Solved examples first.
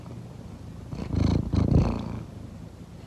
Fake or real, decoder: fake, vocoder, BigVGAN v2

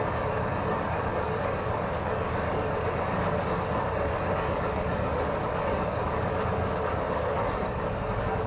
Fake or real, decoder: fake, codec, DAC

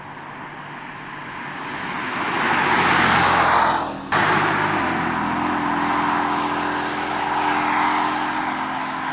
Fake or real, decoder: real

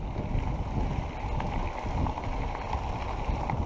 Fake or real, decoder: real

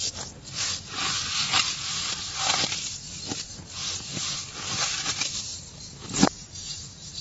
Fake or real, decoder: real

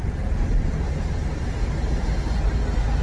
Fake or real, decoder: real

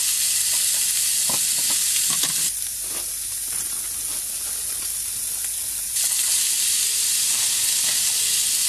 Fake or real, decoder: real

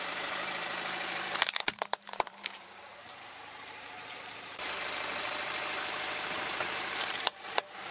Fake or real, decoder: fake, vocoder, BigVGAN v2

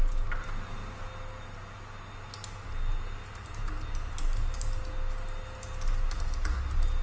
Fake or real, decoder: real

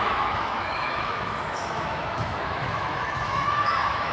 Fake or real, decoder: fake, autoencoder, DAC-VAE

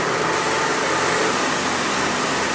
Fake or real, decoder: real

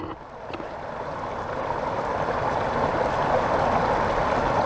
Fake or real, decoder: real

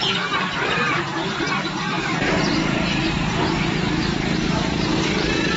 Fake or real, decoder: fake, vocoder, BigVGAN v2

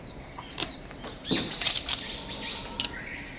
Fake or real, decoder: real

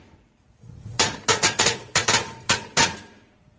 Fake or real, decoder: fake, vocoder, Vocos